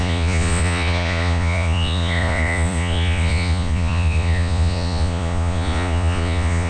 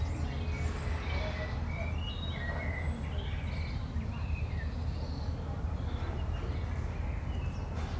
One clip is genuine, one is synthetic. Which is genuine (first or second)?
second